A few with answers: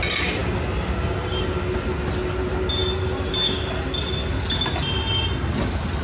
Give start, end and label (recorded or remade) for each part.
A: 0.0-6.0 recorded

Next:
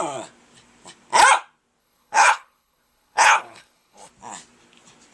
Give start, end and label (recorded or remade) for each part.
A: 0.0-1.8 recorded; 1.8-4.1 remade; 4.1-5.1 recorded

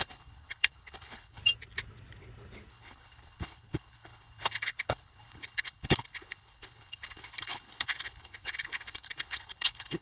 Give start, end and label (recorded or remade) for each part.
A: 0.0-1.4 remade; 1.4-2.7 recorded; 2.7-10.0 remade

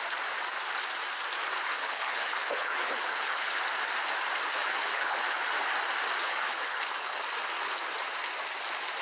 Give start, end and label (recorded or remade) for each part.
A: 0.0-1.7 recorded; 1.7-3.6 remade; 3.6-4.5 recorded; 4.5-5.5 remade; 5.5-6.2 recorded; 6.2-7.2 remade; 7.2-9.0 recorded